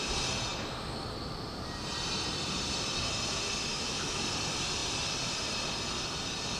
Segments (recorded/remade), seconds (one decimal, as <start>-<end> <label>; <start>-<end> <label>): 0.0-3.7 recorded; 3.7-4.2 remade; 4.2-6.6 recorded